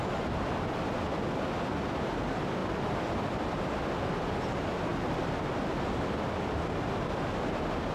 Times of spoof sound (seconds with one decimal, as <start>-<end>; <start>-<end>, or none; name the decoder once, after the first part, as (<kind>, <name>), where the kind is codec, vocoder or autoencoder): 4.9-5.5 (vocoder, BigVGAN v2)